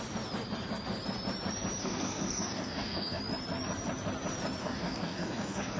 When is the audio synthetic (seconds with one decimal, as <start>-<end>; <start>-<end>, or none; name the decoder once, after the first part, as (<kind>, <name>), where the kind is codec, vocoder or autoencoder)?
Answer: 1.8-3.2 (codec, DAC); 4.6-5.8